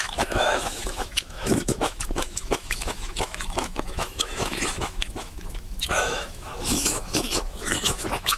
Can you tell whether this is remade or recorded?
remade